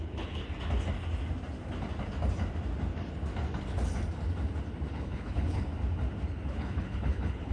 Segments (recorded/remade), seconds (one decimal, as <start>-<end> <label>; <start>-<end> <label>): 0.0-0.4 remade; 0.4-4.9 recorded; 4.9-5.7 remade; 5.7-6.5 recorded; 6.5-7.5 remade